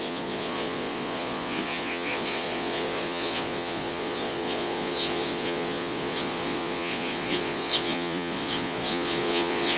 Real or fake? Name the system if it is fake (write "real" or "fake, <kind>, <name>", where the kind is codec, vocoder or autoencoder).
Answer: fake, vocoder, Vocos